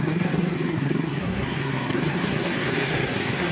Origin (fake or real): fake